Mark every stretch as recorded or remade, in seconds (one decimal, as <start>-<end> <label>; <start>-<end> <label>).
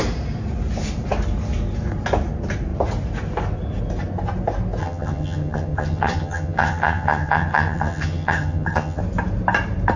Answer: 0.0-4.8 recorded; 4.8-9.0 remade; 9.0-10.0 recorded